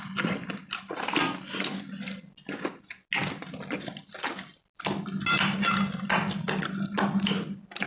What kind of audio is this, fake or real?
real